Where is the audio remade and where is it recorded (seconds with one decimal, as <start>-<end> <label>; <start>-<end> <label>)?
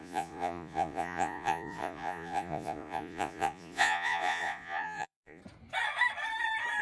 0.0-5.4 remade; 5.4-6.8 recorded